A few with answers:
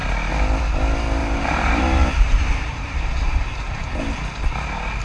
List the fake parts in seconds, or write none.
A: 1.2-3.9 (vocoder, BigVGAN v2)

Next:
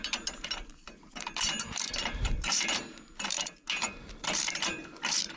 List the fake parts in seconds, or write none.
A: 0.0-5.4 (vocoder, BigVGAN v2)

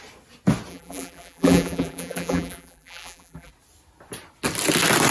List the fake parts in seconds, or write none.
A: 0.7-3.5 (vocoder, BigVGAN v2)

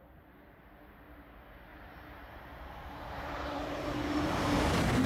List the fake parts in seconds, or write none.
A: 1.7-5.1 (vocoder, BigVGAN v2)

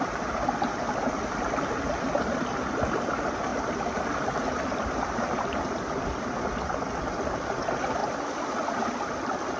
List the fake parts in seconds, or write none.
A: 3.5-5.0 (vocoder, BigVGAN v2); 8.0-9.6

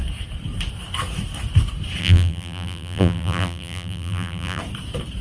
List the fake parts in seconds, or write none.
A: 2.0-4.6 (vocoder, BigVGAN v2)